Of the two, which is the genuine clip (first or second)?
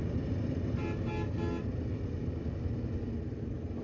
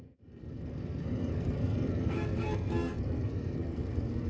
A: first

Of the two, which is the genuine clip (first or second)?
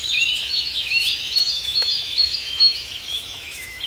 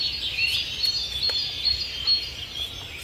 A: second